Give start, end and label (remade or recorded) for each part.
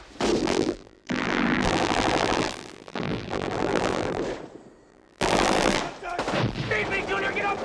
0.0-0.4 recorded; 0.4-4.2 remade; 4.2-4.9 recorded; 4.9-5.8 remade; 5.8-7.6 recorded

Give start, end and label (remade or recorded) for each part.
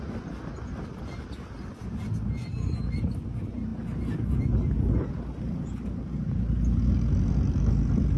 0.0-8.2 recorded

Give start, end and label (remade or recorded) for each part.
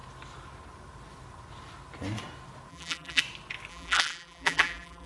0.0-2.7 recorded; 2.7-3.2 remade; 3.2-3.7 recorded; 3.7-5.1 remade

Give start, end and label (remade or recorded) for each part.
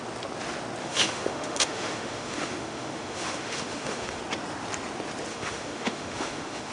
0.0-0.8 recorded; 0.8-4.2 remade; 4.2-5.3 recorded; 5.3-6.7 remade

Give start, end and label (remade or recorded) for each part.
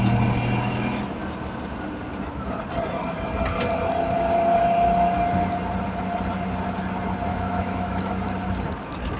0.0-7.3 recorded; 7.3-8.1 remade; 8.1-9.2 recorded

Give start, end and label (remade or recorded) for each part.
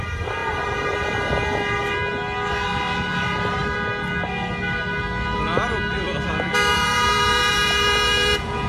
0.0-6.7 recorded; 6.7-8.7 remade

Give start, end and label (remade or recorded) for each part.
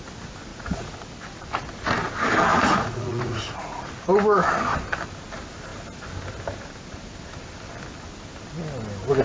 0.0-0.5 recorded; 0.5-1.0 remade; 1.0-2.5 recorded; 2.5-3.8 remade; 3.8-9.2 recorded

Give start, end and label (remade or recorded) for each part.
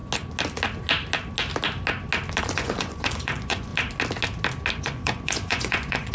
0.0-2.4 recorded; 2.4-3.7 remade; 3.7-4.8 recorded; 4.8-6.1 remade